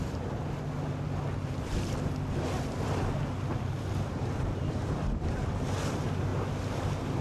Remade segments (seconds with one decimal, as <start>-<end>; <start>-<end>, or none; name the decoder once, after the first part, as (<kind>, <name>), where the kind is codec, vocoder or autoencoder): none